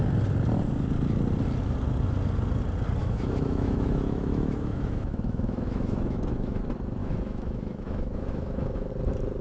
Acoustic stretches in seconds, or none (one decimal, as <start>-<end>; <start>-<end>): 0.0-3.0; 6.6-7.0; 8.9-9.4